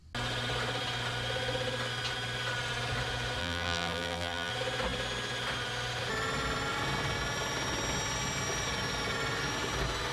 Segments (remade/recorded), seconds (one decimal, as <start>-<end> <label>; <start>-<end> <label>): 0.0-3.4 recorded; 3.4-4.5 remade; 4.5-10.1 recorded

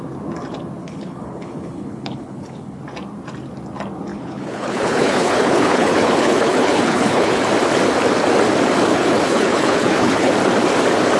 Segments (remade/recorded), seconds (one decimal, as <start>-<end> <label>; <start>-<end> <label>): 0.0-0.8 recorded; 0.8-2.8 remade; 2.8-4.1 recorded; 4.1-7.4 remade; 7.4-8.9 recorded; 8.9-10.3 remade; 10.3-11.2 recorded

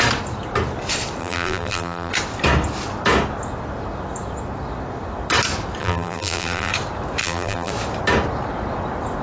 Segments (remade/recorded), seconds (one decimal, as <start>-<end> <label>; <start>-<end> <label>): 0.0-1.2 recorded; 1.2-2.1 remade; 2.1-5.8 recorded; 5.8-6.7 remade; 6.7-7.2 recorded; 7.2-7.7 remade; 7.7-9.2 recorded

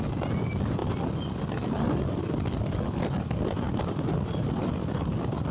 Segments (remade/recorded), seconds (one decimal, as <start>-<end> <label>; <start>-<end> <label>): 0.0-5.5 recorded

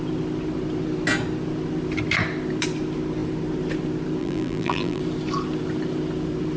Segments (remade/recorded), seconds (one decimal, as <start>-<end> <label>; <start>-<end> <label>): 0.0-4.2 recorded; 4.2-5.0 remade; 5.0-6.6 recorded

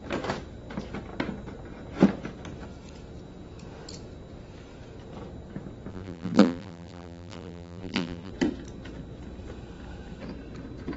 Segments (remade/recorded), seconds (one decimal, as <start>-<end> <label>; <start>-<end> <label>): 0.0-5.9 recorded; 5.9-8.3 remade; 8.3-11.0 recorded

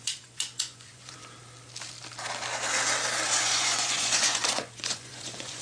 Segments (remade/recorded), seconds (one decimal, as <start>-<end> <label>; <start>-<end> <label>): 0.0-1.2 remade; 1.2-3.4 recorded; 3.4-5.6 remade